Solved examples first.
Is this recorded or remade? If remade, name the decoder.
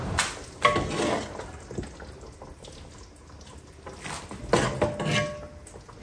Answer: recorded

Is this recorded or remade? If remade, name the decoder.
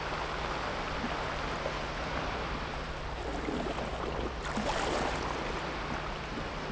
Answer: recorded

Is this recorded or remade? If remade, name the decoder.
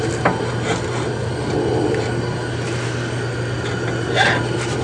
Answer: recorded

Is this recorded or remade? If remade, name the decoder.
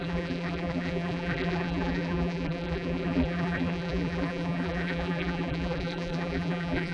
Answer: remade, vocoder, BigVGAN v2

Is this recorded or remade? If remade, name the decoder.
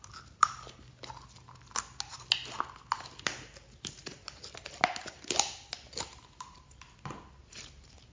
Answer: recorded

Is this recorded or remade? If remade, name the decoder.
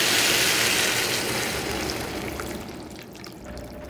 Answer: recorded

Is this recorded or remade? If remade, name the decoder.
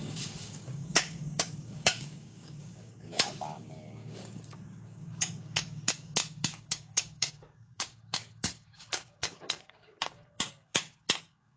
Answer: remade, codec, DAC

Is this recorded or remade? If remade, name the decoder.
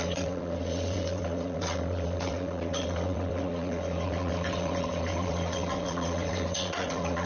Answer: remade, vocoder, WaveNeXt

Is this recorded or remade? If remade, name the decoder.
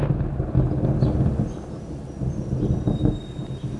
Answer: recorded